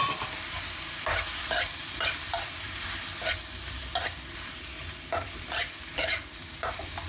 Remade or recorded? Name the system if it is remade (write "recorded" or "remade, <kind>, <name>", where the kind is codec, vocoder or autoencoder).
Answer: remade, vocoder, BigVGAN v2